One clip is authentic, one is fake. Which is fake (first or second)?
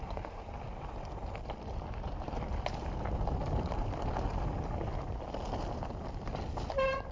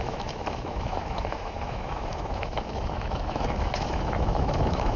second